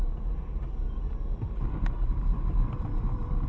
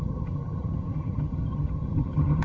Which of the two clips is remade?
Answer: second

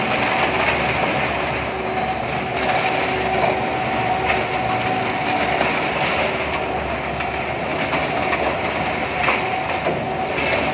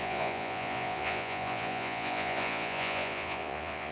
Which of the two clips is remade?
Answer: second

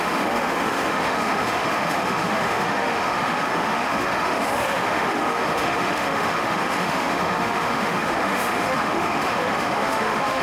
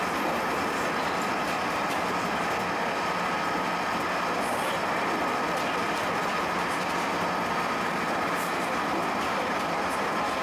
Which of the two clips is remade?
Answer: first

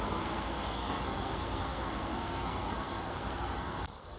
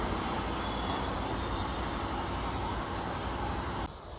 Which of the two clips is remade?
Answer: first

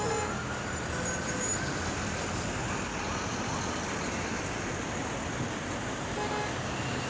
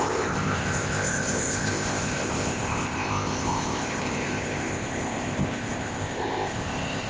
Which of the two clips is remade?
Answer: second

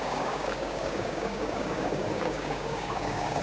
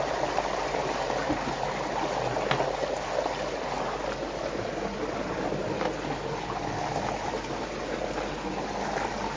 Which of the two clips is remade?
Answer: first